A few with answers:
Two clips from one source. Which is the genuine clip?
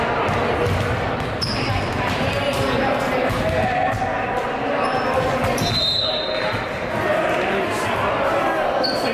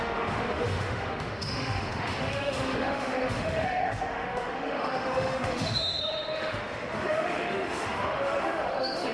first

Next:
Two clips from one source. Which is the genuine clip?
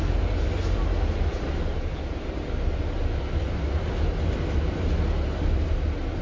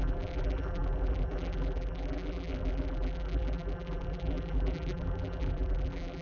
first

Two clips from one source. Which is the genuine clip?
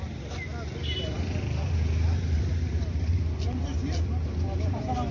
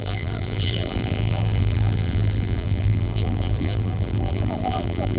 first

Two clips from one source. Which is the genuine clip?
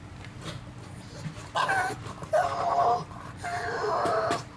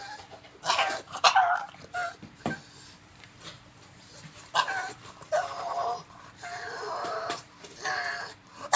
first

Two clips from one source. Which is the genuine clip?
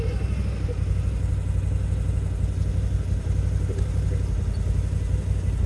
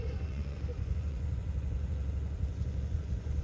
first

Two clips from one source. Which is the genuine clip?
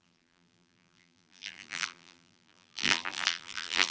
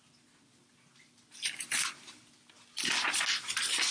second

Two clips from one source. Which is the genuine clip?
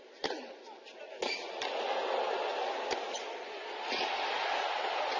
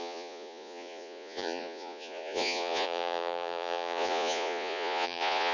first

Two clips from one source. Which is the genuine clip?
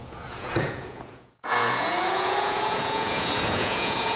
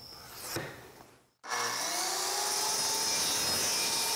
second